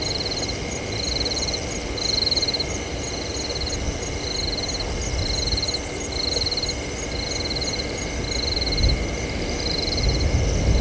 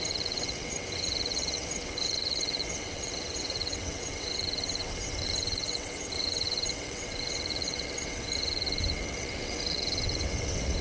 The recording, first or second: first